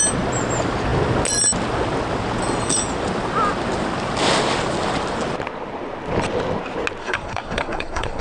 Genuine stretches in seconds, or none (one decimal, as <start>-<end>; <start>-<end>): 0.0-7.0